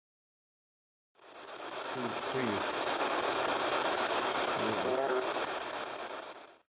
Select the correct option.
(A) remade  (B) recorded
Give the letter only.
A